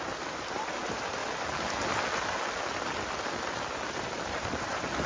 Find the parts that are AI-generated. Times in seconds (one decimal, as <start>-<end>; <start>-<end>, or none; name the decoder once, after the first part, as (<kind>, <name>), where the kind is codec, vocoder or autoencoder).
0.0-1.2 (vocoder, BigVGAN v2); 4.3-5.1